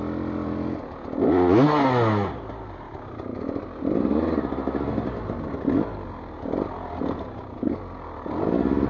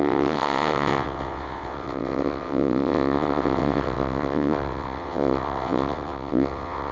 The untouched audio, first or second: first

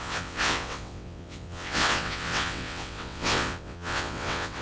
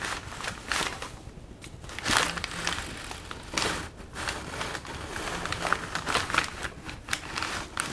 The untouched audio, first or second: second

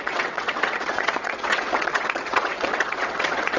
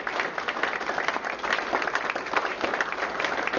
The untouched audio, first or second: second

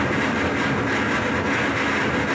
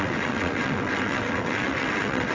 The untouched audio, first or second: first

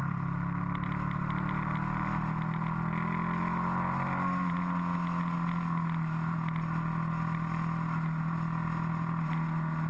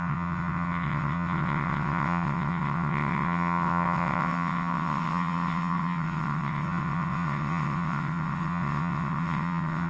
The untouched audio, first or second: first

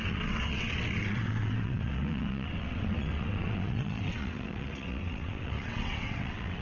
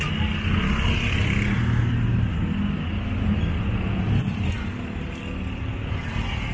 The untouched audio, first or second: second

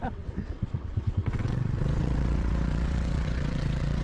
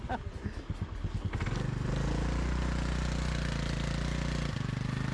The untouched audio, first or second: second